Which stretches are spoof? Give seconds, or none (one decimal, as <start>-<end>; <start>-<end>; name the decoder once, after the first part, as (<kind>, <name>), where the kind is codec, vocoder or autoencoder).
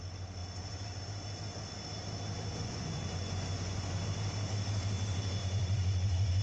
2.6-4.0 (vocoder, Vocos); 5.4-6.4